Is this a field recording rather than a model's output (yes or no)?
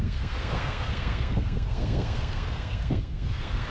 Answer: no